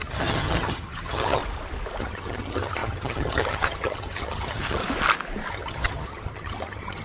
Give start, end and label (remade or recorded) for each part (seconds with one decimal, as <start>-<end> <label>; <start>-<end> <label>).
0.0-1.4 remade; 1.4-2.0 recorded; 2.0-4.8 remade; 4.8-5.5 recorded; 5.5-7.0 remade